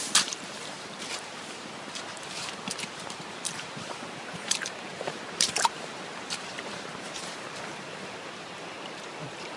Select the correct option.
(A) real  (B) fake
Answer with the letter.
B